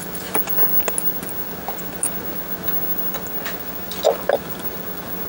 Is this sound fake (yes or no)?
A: no